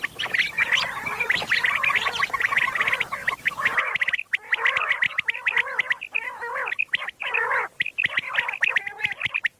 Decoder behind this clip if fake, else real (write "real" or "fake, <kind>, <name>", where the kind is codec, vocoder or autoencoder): real